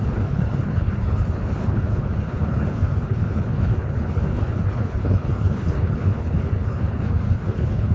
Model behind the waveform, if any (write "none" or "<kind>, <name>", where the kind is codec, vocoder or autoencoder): codec, HILCodec